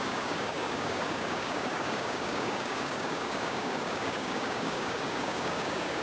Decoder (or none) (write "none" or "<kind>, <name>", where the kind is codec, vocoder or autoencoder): codec, DAC